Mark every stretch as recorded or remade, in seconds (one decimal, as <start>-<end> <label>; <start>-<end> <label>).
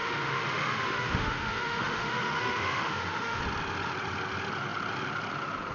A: 0.0-3.4 remade; 3.4-5.7 recorded